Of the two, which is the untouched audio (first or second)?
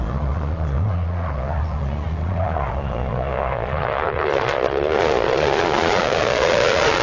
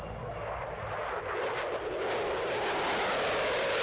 second